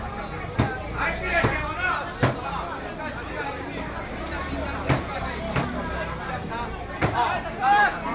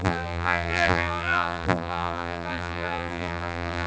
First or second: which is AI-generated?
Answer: second